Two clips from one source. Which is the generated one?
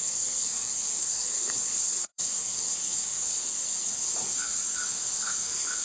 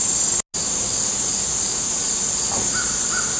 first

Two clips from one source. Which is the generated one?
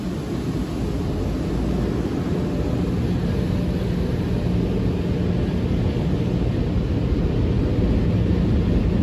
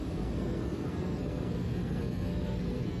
second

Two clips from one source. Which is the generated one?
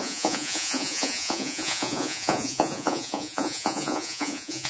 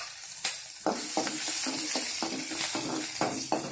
first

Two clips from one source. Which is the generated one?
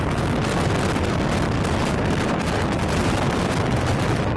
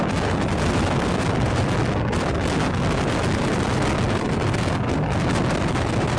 first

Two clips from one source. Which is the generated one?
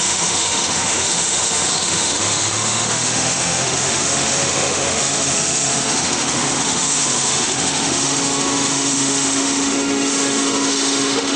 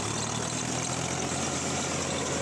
first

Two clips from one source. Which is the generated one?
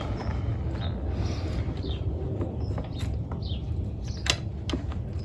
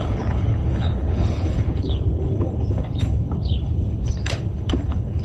second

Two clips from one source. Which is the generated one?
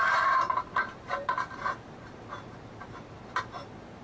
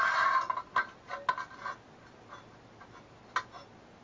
first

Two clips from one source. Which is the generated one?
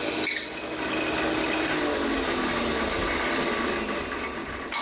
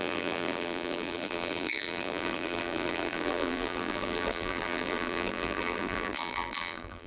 second